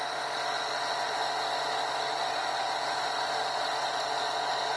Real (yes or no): yes